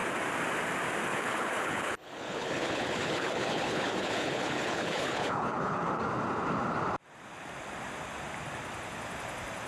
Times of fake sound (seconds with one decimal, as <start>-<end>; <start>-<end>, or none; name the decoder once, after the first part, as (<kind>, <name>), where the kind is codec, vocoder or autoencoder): 1.1-6.0 (codec, HILCodec)